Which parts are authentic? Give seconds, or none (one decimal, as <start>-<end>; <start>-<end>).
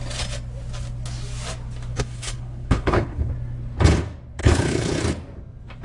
0.0-1.9; 3.3-4.4; 5.0-5.8